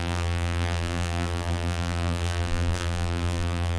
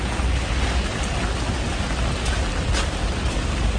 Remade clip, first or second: first